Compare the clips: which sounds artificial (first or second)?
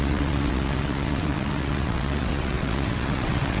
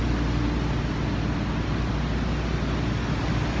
first